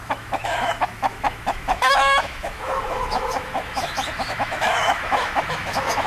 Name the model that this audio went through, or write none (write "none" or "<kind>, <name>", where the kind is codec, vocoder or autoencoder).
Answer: autoencoder, DAC-VAE